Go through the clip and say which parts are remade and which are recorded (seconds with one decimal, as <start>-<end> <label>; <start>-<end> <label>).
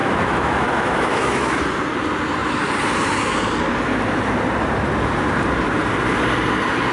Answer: 0.0-1.6 remade; 1.6-6.9 recorded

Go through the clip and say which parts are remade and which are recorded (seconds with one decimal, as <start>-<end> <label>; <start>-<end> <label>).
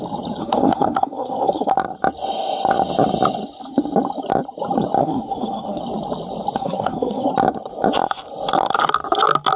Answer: 0.0-0.4 recorded; 0.4-1.7 remade; 1.7-5.0 recorded; 5.0-5.8 remade; 5.8-6.6 recorded; 6.6-7.3 remade; 7.3-9.6 recorded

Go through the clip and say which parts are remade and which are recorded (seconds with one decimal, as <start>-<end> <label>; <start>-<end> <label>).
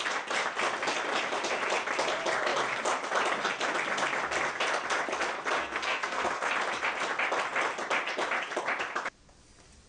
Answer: 0.0-5.6 recorded; 5.6-6.5 remade; 6.5-9.9 recorded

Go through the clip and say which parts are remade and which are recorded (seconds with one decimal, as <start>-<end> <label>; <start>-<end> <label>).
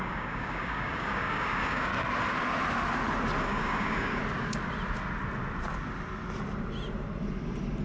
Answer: 0.0-1.9 remade; 1.9-3.4 recorded; 3.4-4.2 remade; 4.2-7.8 recorded